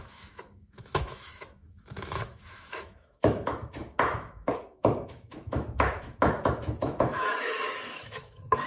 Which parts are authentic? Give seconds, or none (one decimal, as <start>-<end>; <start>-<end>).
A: none